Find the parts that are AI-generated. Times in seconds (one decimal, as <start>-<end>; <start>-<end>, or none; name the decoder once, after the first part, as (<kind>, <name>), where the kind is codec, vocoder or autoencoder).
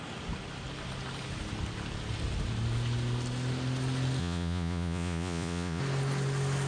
4.2-5.8 (vocoder, Vocos)